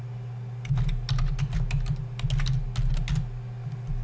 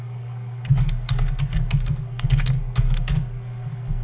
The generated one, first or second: second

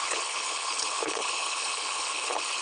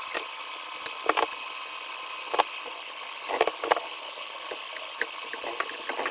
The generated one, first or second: first